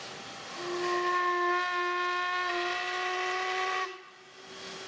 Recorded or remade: recorded